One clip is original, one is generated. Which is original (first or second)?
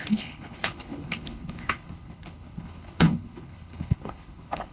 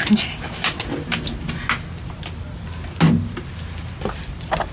second